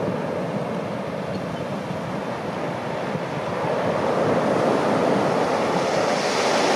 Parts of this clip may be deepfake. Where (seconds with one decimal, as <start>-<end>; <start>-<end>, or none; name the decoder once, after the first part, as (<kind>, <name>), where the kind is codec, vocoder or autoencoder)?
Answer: none